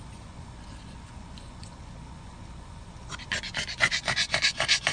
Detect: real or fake fake